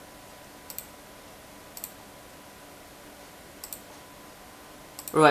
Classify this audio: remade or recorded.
recorded